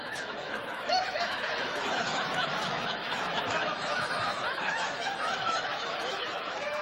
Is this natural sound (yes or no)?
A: no